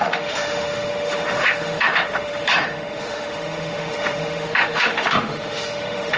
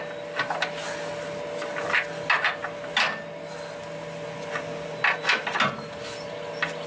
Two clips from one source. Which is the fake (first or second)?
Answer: first